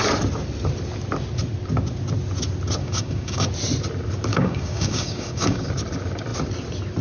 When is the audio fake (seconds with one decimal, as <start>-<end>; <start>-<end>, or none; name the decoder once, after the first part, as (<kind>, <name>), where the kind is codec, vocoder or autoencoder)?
2.8-3.5 (codec, DAC); 4.3-5.7